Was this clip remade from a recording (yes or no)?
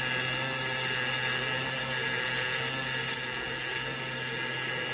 no